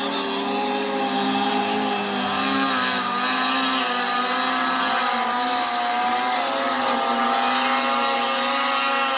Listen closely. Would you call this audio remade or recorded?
recorded